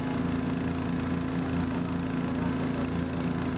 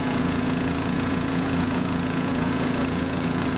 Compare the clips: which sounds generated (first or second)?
second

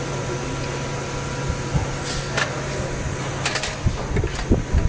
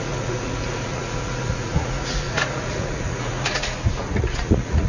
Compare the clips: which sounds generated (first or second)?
second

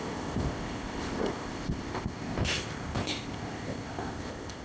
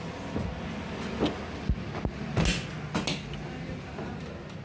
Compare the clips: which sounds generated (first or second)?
first